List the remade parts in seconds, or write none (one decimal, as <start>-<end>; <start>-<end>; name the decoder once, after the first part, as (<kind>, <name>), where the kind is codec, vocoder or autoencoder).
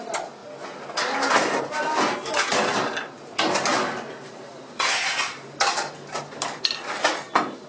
none